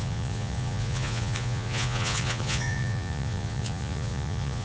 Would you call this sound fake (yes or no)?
yes